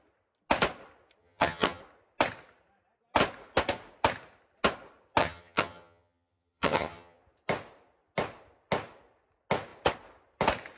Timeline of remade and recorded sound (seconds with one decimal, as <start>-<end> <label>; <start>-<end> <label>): 0.0-1.2 recorded; 1.2-1.8 remade; 1.8-5.2 recorded; 5.2-7.2 remade; 7.2-10.8 recorded